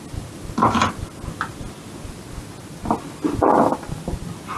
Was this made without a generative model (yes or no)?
yes